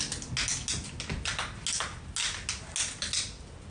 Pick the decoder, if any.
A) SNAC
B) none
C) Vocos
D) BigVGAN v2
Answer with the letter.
B